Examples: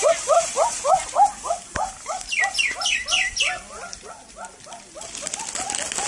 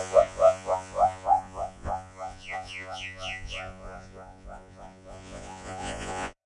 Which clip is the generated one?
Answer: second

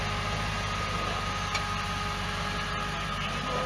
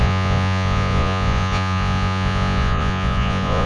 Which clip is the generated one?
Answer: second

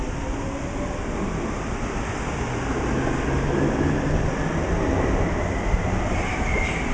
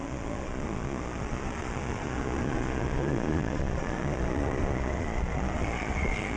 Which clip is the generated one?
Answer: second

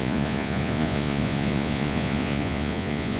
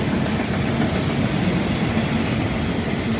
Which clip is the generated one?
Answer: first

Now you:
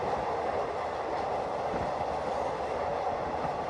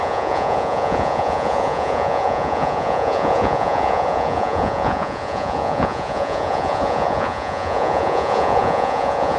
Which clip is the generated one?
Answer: second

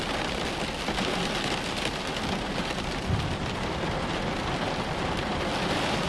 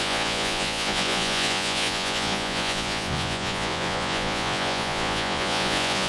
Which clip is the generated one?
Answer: second